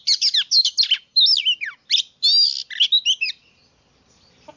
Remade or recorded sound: recorded